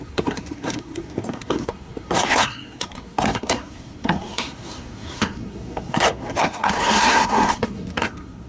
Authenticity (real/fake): fake